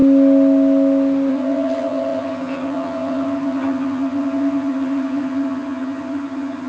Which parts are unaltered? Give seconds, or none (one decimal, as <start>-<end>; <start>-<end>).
0.0-1.3